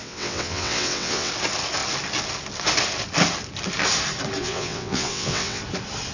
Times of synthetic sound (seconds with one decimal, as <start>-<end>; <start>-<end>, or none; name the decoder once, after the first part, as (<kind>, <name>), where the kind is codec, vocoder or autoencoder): 0.0-1.3 (vocoder, WaveNeXt); 4.4-5.6